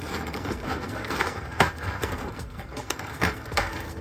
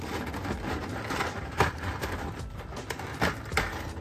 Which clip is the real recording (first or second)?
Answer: second